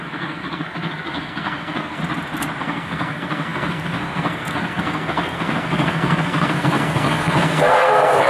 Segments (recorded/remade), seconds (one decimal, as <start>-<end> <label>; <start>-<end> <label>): 0.0-2.0 remade; 2.0-2.6 recorded; 2.6-8.3 remade